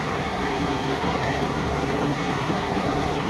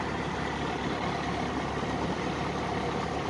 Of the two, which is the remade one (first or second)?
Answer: first